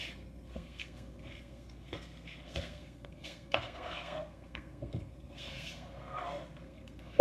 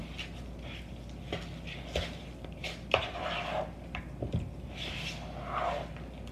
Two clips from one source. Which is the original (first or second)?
second